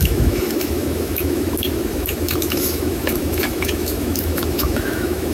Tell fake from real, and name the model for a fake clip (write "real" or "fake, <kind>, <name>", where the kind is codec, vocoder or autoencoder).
fake, autoencoder, DAC-VAE